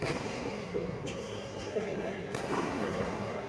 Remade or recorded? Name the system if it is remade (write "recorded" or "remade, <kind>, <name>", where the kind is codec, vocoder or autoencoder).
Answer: remade, codec, SNAC